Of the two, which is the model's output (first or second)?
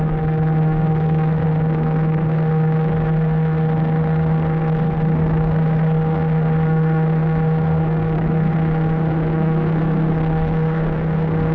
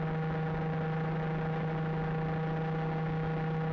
first